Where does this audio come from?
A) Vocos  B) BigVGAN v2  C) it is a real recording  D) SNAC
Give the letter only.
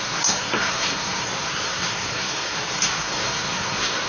D